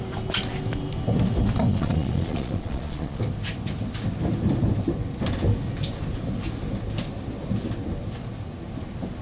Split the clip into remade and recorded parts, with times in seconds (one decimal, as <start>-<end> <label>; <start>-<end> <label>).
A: 0.0-1.7 recorded; 1.7-3.2 remade; 3.2-9.2 recorded